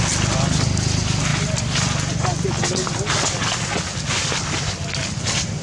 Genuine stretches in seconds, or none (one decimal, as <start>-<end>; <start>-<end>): 0.0-5.6